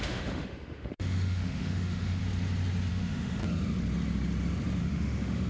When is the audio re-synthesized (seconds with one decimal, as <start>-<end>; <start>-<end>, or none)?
0.0-2.2; 2.9-3.4; 4.8-5.5